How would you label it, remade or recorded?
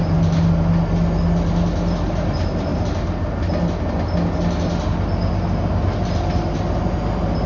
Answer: recorded